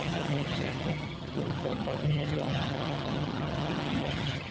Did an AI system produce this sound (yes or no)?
yes